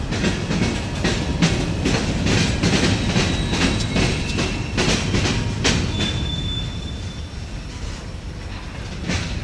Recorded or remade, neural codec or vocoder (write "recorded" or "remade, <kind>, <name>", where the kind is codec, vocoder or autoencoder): recorded